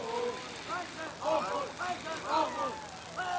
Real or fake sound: real